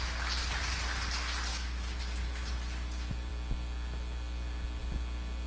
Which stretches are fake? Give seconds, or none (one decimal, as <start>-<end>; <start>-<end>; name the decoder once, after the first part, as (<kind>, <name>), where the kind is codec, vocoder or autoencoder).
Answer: 1.5-2.0 (codec, DAC)